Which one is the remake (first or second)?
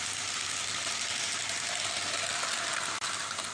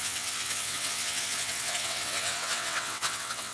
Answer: second